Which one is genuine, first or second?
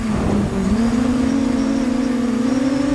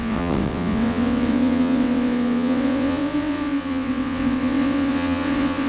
first